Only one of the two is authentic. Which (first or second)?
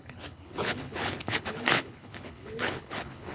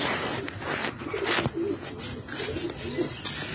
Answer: second